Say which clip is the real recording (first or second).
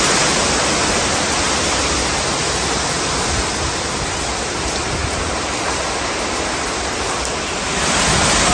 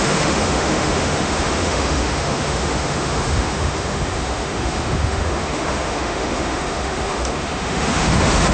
first